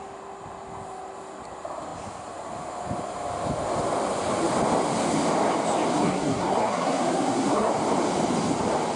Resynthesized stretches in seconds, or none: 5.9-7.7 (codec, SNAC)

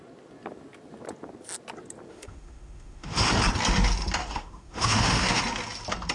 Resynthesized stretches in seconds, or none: 2.1-3.3 (autoencoder, DAC-VAE); 4.2-5.4

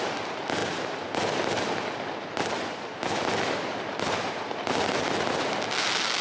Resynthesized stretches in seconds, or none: 0.0-0.6 (vocoder, BigVGAN v2); 4.3-6.2

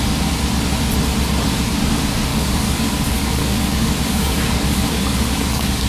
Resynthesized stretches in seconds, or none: 2.3-5.9 (codec, DAC)

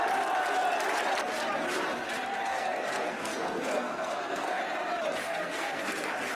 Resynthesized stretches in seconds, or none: 2.5-4.6 (codec, SNAC); 5.2-6.3

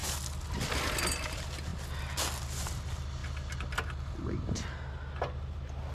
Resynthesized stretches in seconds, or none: none